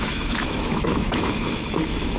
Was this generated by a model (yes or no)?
yes